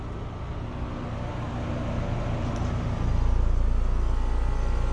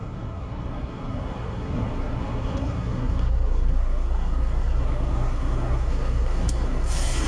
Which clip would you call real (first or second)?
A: first